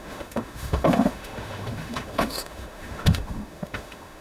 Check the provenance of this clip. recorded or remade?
remade